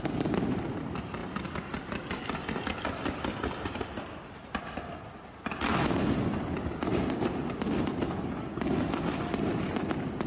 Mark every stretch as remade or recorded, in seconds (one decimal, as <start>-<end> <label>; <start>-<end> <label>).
0.0-10.3 recorded